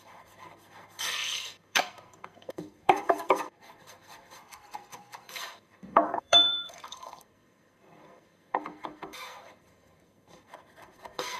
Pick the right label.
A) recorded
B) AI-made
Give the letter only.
B